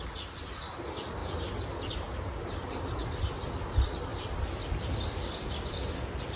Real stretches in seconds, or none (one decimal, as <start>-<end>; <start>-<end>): 0.0-6.4